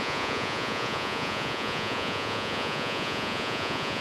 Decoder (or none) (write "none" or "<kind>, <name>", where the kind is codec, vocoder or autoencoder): vocoder, Vocos